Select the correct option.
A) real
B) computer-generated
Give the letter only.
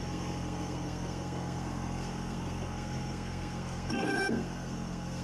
B